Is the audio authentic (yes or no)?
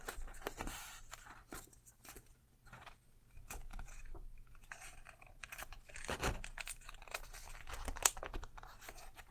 no